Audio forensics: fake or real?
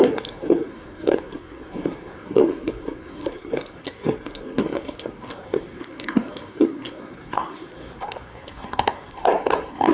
fake